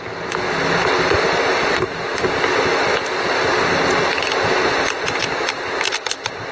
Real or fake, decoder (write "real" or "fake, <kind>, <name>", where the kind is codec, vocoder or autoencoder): real